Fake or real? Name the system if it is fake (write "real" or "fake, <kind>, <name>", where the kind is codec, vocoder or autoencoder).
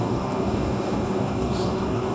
fake, codec, DAC